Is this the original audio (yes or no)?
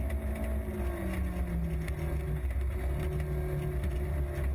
yes